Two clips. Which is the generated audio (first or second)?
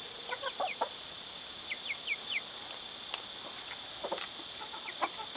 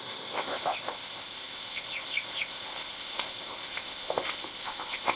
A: second